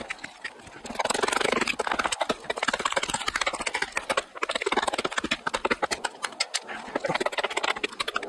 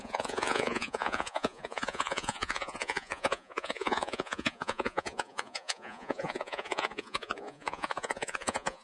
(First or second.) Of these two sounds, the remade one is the second